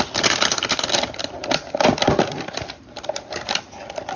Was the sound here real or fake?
real